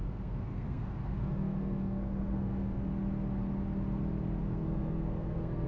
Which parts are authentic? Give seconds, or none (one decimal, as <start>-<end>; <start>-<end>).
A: 2.9-4.4